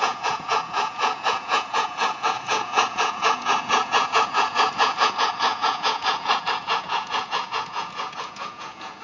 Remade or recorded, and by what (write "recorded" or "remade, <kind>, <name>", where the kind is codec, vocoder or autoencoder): remade, vocoder, Vocos